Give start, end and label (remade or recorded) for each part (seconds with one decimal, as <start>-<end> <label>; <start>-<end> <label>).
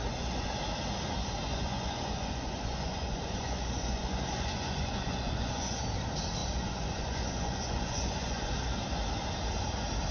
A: 0.0-0.5 remade; 0.5-1.5 recorded; 1.5-5.8 remade; 5.8-6.4 recorded; 6.4-8.5 remade; 8.5-10.1 recorded